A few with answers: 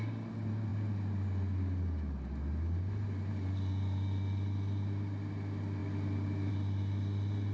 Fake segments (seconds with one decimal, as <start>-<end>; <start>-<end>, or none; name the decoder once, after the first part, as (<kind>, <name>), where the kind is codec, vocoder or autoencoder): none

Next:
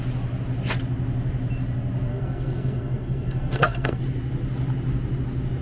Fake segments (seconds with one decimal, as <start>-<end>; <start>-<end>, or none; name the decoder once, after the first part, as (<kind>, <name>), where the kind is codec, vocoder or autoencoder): 2.1-4.0 (codec, SNAC)

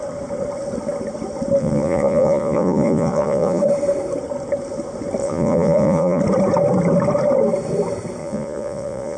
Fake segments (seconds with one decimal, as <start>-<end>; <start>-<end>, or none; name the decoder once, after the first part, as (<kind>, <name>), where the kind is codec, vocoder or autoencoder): 1.6-3.6 (vocoder, Vocos); 5.2-6.2; 8.2-9.2

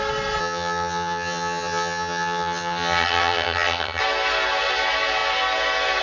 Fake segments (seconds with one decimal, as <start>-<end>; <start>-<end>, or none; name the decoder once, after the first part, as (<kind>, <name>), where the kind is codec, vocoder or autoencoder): 0.4-4.0 (vocoder, HiFi-GAN)

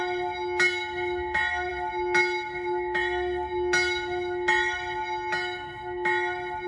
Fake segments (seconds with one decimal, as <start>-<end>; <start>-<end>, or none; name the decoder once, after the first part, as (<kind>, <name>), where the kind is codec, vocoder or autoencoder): none

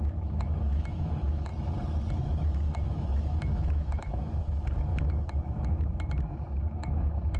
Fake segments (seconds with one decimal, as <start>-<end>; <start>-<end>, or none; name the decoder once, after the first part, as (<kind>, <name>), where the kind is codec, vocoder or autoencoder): 0.0-1.5 (autoencoder, DAC-VAE); 2.1-7.4

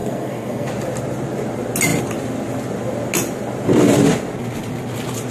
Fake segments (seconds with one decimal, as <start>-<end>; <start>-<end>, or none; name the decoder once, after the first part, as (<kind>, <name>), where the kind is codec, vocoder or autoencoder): 0.0-0.7 (codec, SNAC)